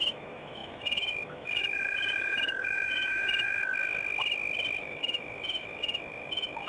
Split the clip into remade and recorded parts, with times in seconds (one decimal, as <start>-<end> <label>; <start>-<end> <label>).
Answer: 0.0-3.6 remade; 3.6-4.8 recorded; 4.8-6.7 remade